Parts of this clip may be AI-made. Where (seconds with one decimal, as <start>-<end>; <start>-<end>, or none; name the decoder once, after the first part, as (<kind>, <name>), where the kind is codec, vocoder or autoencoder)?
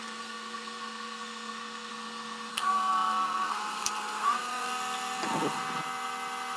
0.0-1.9 (codec, SNAC); 2.5-4.7